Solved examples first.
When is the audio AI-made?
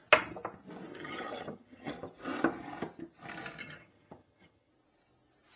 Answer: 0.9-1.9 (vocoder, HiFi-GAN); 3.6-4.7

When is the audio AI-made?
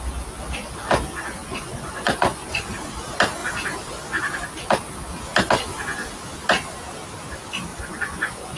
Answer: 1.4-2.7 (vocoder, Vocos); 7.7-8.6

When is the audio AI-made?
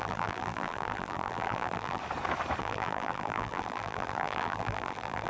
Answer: 0.0-2.0 (vocoder, BigVGAN v2); 2.6-5.3